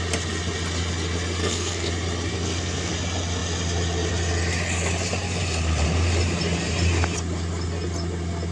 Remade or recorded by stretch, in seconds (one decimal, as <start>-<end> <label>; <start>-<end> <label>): 0.0-1.4 recorded; 1.4-1.9 remade; 1.9-2.3 recorded; 2.3-2.9 remade; 2.9-8.5 recorded